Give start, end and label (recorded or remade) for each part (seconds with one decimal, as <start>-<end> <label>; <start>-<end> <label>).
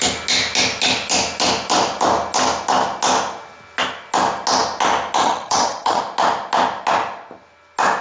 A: 0.0-5.2 recorded; 5.2-6.0 remade; 6.0-8.0 recorded